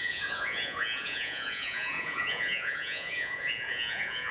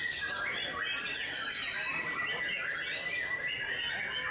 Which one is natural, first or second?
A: second